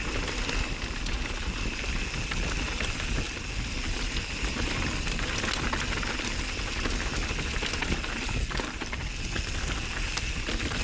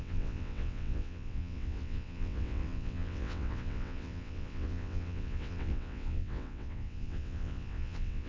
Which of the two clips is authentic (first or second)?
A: first